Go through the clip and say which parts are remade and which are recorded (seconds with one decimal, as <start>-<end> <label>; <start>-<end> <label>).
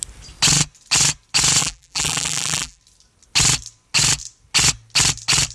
0.0-1.6 recorded; 1.6-2.8 remade; 2.8-5.5 recorded